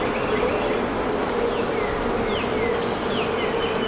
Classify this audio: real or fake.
real